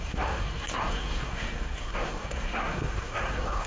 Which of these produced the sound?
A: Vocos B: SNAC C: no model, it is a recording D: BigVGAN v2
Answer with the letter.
B